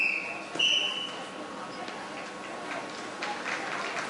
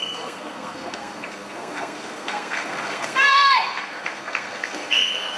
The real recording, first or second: first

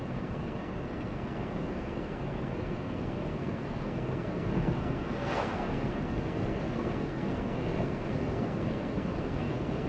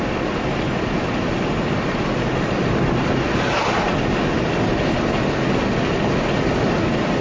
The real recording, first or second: second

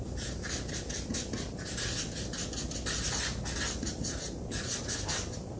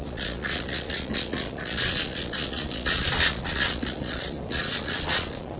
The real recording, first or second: first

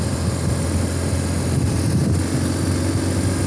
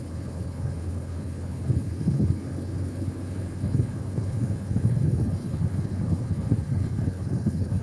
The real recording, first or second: first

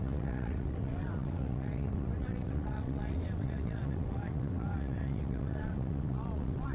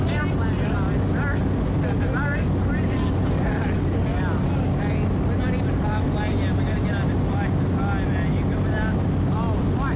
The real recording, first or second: second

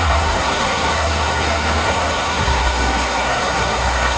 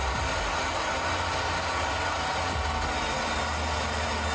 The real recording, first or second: second